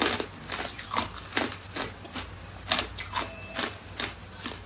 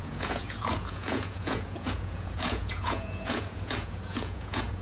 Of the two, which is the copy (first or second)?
second